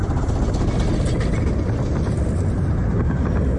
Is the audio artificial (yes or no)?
no